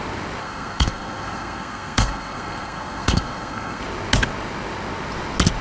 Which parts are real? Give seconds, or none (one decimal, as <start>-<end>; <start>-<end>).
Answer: 0.0-0.4; 3.8-5.6